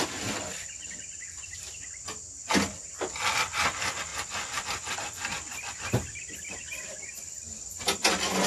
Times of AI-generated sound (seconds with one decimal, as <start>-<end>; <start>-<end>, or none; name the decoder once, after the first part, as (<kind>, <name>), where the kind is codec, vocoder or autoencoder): none